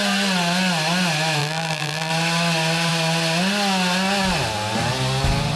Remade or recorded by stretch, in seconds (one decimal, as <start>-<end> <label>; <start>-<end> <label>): 0.0-1.4 recorded; 1.4-2.1 remade; 2.1-5.6 recorded

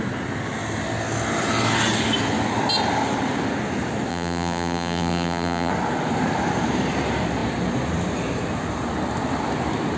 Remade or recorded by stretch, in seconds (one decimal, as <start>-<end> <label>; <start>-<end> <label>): 0.0-4.1 recorded; 4.1-5.7 remade; 5.7-10.0 recorded

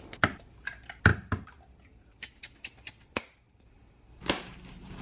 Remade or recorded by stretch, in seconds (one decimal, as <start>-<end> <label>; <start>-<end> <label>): 0.0-5.0 remade

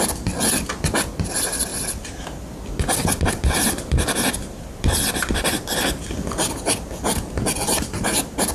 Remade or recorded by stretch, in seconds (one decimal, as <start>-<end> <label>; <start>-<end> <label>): 0.0-1.7 remade; 1.7-3.3 recorded; 3.3-8.5 remade